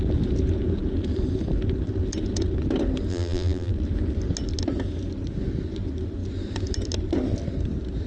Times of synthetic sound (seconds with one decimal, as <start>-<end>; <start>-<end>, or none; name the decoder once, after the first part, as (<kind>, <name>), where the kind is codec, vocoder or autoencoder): 3.1-3.7 (vocoder, BigVGAN v2)